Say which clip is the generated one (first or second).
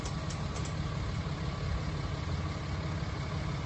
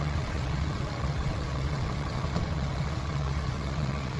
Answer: second